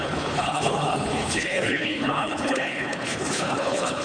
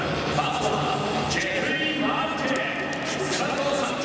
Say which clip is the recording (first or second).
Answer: second